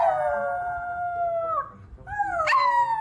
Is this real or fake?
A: real